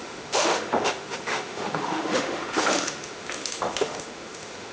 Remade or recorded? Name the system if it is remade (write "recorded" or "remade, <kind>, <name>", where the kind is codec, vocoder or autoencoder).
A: remade, autoencoder, DAC-VAE